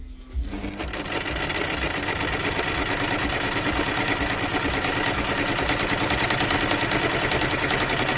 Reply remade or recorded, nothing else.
recorded